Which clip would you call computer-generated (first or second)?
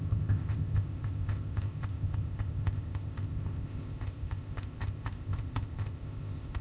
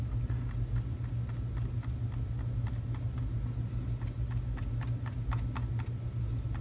first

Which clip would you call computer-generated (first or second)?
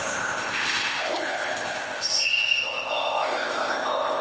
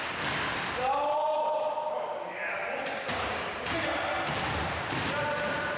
first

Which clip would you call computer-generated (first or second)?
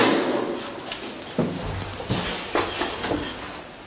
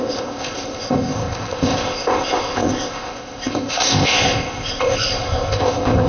second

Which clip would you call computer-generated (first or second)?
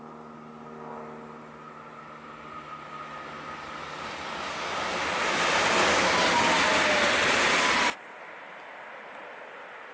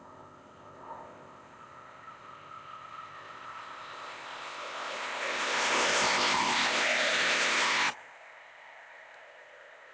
second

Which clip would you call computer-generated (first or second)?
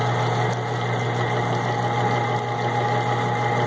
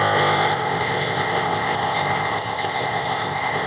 second